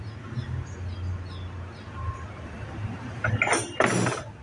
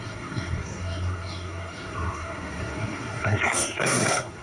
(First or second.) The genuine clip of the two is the first